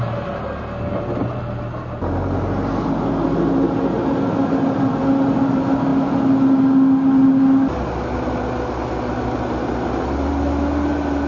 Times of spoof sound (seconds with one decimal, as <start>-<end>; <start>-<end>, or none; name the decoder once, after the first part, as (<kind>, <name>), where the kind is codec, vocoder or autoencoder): none